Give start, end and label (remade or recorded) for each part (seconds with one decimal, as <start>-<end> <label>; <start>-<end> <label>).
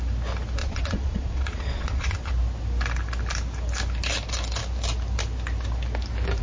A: 0.0-0.6 recorded; 0.6-2.3 remade; 2.3-6.4 recorded